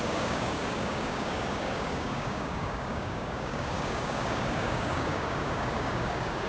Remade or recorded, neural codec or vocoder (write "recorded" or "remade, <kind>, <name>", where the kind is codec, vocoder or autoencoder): remade, codec, DAC